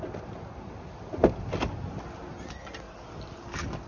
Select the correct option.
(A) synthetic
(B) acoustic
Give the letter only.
B